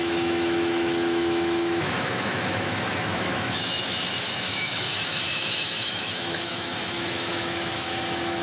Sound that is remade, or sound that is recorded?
remade